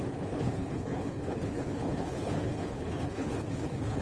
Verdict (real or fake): fake